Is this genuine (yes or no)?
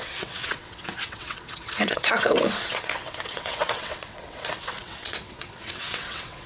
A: no